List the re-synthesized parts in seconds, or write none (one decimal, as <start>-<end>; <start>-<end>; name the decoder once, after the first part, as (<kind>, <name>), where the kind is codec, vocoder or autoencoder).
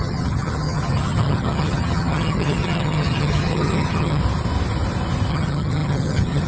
0.0-4.2 (vocoder, HiFi-GAN); 5.3-6.5